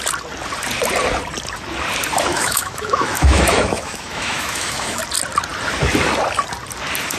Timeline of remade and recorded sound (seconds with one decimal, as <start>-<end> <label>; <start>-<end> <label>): 0.0-2.3 recorded; 2.3-5.0 remade; 5.0-7.2 recorded